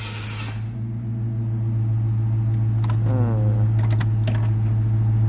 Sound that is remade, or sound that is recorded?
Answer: recorded